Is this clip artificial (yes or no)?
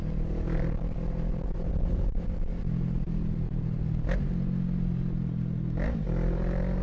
no